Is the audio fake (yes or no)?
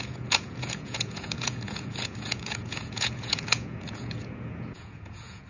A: yes